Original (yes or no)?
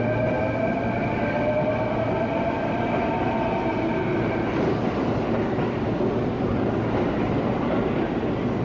yes